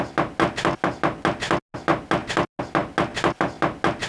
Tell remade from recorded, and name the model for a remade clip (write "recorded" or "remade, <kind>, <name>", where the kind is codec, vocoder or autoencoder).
recorded